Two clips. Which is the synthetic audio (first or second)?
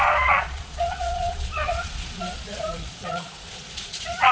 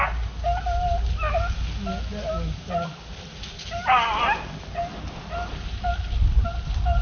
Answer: first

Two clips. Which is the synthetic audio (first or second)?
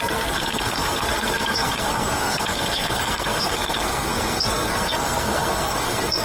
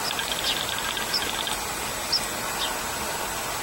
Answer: first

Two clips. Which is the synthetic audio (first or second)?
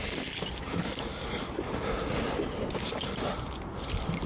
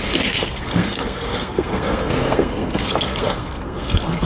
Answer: second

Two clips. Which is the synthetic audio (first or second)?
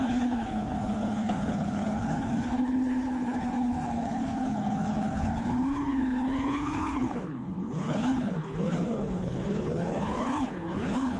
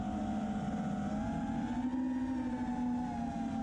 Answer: first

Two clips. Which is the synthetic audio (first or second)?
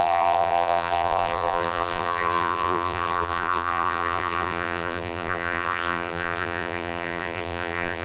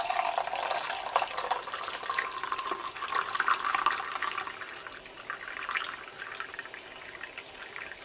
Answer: first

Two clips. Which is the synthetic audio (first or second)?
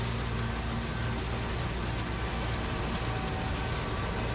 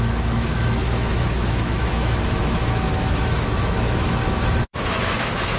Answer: second